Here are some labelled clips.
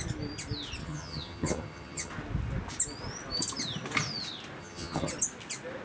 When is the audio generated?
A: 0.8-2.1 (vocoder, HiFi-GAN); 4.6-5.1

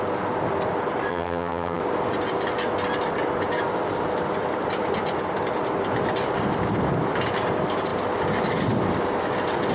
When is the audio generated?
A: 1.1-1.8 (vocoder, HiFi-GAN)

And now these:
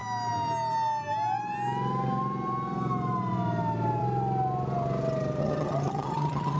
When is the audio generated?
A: 5.4-6.6 (vocoder, HiFi-GAN)

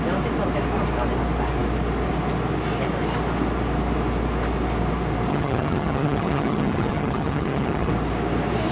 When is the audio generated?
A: 5.3-7.9 (vocoder, HiFi-GAN)